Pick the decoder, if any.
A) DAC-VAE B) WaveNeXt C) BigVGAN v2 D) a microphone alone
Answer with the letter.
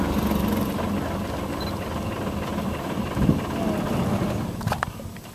D